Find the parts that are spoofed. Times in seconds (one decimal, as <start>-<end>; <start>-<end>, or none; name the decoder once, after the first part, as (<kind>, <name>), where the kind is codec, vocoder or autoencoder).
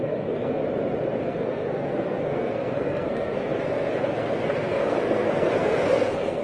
0.0-0.6 (codec, SNAC); 1.2-6.4